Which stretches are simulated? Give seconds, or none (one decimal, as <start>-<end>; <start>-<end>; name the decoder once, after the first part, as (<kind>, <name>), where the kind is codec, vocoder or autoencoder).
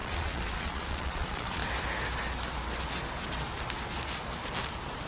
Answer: 0.0-1.6 (vocoder, Vocos)